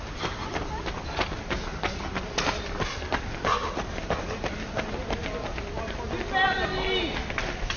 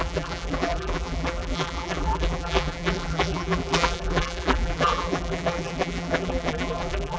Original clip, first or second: first